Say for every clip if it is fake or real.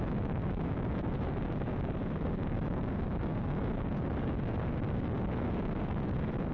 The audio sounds fake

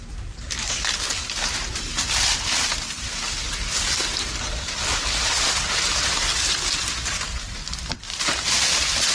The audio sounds real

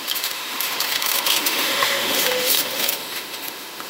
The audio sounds fake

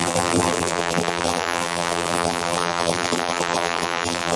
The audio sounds fake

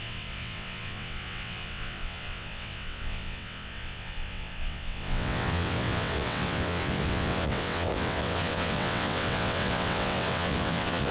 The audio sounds fake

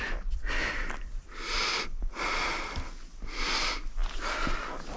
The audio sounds real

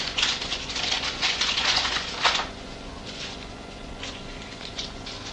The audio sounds fake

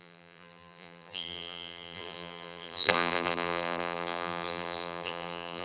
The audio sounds fake